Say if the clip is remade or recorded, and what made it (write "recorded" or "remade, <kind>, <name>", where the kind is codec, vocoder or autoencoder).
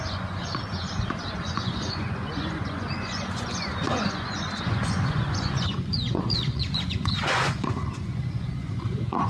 remade, vocoder, Vocos